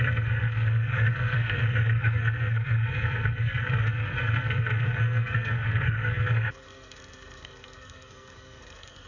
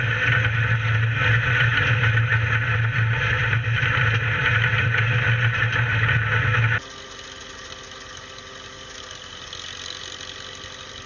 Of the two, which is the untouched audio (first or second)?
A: second